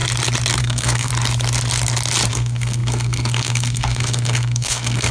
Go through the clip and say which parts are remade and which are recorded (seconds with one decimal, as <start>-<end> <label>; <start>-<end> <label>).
0.0-0.6 recorded; 0.6-1.1 remade; 1.1-2.3 recorded; 2.3-5.1 remade